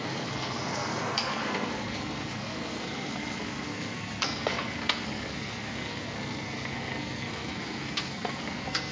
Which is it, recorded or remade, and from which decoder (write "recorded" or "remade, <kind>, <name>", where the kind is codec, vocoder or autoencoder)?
remade, codec, SNAC